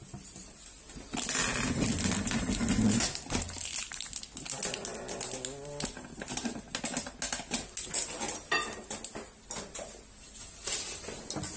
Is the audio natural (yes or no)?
yes